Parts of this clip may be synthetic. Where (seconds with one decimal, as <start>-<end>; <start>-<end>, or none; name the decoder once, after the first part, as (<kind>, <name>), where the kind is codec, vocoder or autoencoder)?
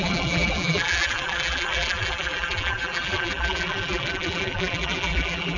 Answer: 0.0-5.6 (vocoder, BigVGAN v2)